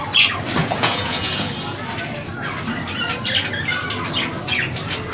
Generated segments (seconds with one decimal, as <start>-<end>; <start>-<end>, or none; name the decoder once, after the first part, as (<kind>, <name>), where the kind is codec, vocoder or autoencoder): 0.6-1.5 (vocoder, Vocos)